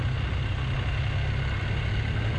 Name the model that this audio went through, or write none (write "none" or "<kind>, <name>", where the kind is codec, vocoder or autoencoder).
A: none